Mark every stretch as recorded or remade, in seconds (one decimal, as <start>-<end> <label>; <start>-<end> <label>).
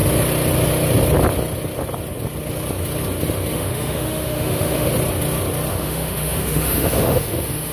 0.0-3.5 recorded; 3.5-4.9 remade; 4.9-5.7 recorded; 5.7-7.7 remade